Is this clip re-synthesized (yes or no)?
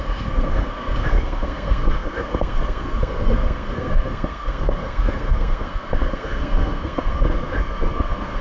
yes